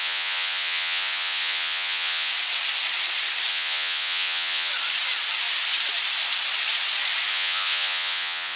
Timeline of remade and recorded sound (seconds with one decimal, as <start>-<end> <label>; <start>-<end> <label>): 0.0-2.3 remade; 2.3-3.5 recorded; 3.5-4.7 remade; 4.7-7.3 recorded; 7.3-8.6 remade